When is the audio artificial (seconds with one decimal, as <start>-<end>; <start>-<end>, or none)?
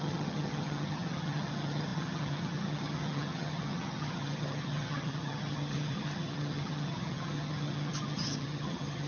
0.0-9.1